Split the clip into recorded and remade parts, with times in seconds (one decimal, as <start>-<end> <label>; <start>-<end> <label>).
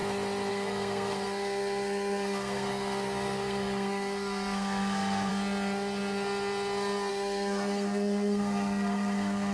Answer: 0.0-0.5 recorded; 0.5-5.3 remade; 5.3-7.1 recorded; 7.1-9.5 remade